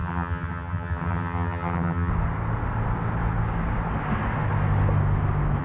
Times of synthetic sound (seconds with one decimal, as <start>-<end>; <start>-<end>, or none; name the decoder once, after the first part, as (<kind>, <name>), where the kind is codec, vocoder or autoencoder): 0.0-2.1 (vocoder, HiFi-GAN)